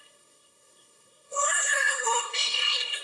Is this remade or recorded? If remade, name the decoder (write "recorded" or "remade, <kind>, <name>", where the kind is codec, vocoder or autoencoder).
remade, codec, SNAC